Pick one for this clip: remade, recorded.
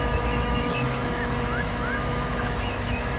remade